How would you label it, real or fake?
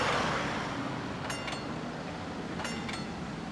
real